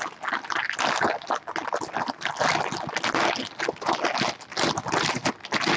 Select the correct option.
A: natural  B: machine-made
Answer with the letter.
A